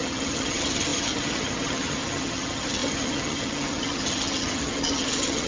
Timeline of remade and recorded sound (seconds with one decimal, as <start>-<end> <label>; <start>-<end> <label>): 0.0-5.5 remade